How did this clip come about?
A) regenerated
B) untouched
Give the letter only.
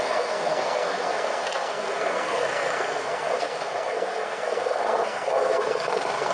A